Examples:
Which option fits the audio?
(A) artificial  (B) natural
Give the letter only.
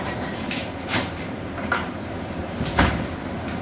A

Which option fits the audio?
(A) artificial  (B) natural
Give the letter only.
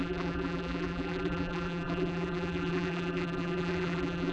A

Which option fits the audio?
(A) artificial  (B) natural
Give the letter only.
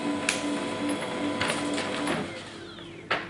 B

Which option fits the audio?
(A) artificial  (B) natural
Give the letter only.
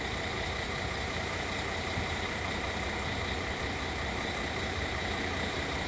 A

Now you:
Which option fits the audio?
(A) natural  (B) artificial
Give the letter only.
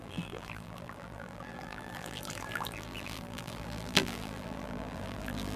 B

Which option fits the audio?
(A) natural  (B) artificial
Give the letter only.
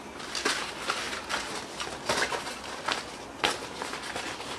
A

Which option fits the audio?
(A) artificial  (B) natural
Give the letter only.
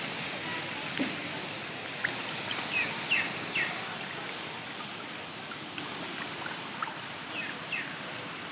B